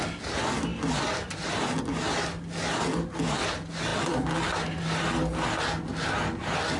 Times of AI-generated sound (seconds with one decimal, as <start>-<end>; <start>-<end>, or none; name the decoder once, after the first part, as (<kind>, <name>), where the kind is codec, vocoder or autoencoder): 3.9-4.6 (vocoder, BigVGAN v2)

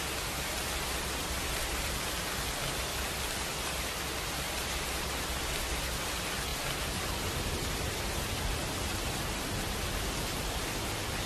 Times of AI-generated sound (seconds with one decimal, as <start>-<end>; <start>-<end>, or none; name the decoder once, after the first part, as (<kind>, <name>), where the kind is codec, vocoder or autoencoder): 1.2-2.0 (vocoder, BigVGAN v2)

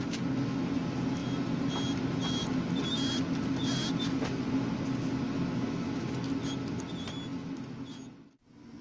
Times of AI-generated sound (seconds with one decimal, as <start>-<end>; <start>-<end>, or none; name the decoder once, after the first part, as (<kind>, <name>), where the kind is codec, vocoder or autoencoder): none

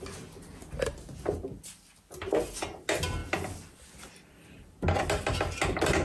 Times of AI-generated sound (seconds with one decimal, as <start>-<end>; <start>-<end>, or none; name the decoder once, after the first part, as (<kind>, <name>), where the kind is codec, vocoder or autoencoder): 3.2-4.6 (vocoder, BigVGAN v2)

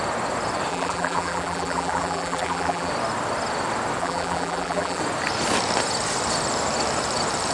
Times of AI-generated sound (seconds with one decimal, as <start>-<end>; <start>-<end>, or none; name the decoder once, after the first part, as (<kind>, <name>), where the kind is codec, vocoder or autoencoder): 0.7-2.9 (vocoder, BigVGAN v2); 4.0-5.0